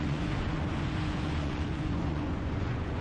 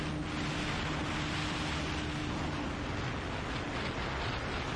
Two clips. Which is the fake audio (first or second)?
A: first